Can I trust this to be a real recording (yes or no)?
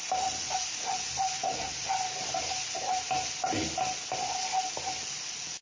yes